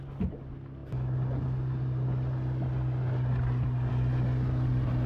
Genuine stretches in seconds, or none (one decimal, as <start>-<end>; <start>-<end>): 0.0-5.1